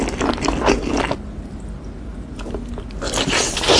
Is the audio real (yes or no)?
yes